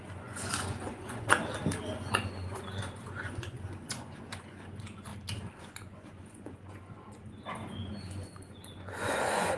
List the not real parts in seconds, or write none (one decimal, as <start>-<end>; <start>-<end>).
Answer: 0.0-1.2; 2.0-5.1; 5.6-9.6